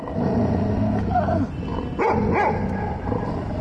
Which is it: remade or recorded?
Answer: recorded